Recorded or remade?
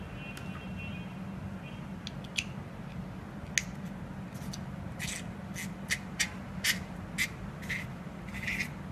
recorded